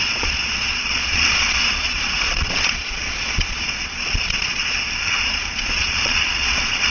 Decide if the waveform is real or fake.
fake